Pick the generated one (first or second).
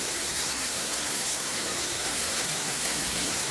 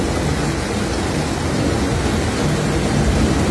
first